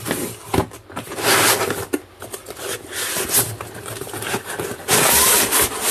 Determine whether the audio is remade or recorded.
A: recorded